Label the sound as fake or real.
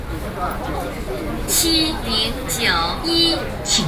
real